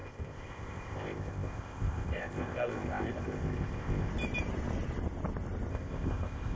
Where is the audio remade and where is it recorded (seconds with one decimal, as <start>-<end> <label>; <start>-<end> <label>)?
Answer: 0.0-4.1 remade; 4.1-5.7 recorded; 5.7-6.6 remade